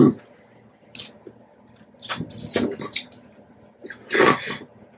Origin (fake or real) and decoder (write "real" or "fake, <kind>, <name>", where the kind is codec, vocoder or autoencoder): real